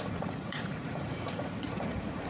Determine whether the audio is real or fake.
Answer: fake